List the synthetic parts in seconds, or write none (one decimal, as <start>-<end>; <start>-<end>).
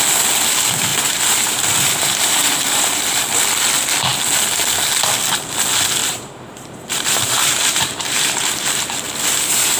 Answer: 0.9-3.3; 6.0-9.0